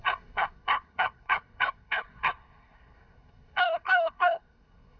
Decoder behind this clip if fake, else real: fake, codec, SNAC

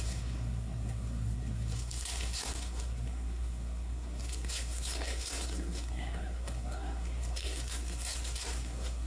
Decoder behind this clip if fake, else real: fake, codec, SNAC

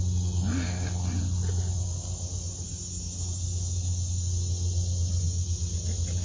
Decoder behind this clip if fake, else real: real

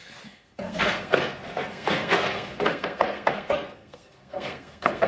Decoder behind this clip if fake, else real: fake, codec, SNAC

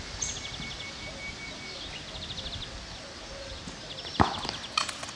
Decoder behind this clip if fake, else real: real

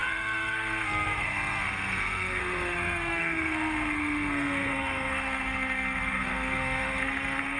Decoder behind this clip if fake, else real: fake, codec, SNAC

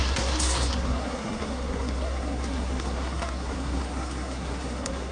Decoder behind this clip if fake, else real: fake, codec, SNAC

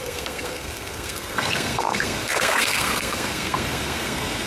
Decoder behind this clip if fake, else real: fake, codec, SNAC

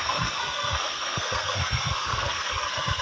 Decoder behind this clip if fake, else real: fake, codec, SNAC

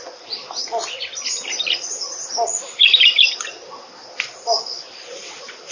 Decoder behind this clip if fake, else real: real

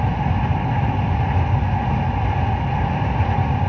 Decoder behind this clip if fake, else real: real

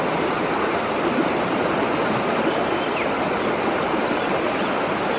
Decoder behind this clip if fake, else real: real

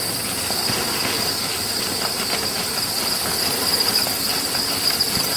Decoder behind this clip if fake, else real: real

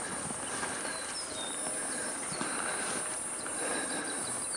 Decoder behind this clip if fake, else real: real